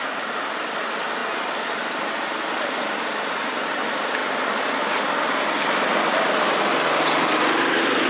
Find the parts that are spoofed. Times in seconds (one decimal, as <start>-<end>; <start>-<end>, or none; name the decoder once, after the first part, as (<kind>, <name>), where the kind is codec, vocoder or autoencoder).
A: none